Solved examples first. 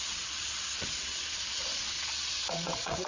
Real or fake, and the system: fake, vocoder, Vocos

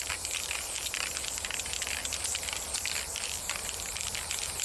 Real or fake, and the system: real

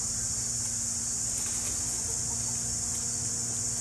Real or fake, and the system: real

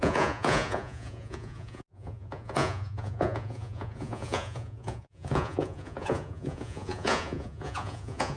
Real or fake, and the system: fake, vocoder, Vocos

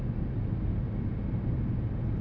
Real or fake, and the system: real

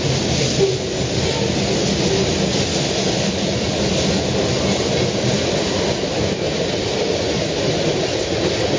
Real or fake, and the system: real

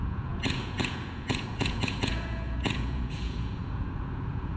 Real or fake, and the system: fake, vocoder, Vocos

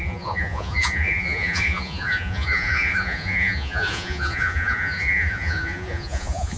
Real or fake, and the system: fake, vocoder, Vocos